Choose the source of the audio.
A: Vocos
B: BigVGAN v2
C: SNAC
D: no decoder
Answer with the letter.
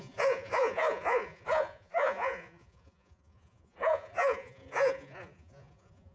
A